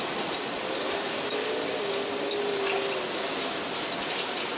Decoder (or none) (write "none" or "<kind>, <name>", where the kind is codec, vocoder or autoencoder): none